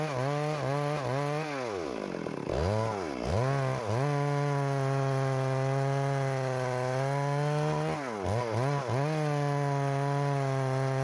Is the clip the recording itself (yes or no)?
yes